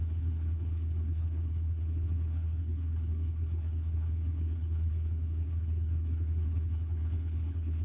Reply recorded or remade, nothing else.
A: remade